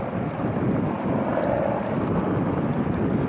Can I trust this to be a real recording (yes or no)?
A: no